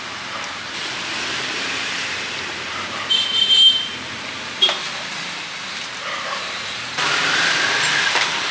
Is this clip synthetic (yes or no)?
yes